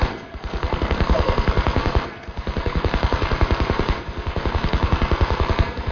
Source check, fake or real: fake